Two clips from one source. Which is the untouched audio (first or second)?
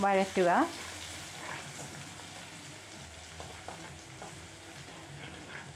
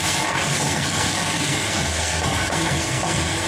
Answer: first